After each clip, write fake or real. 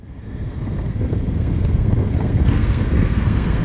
fake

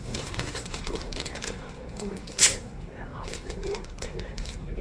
fake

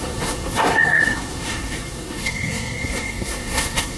fake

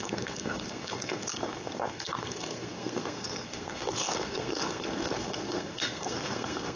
fake